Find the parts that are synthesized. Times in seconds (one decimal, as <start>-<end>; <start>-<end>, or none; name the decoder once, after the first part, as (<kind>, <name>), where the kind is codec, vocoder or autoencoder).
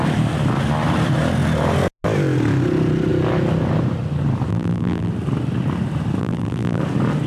4.5-5.1 (vocoder, BigVGAN v2); 6.2-6.8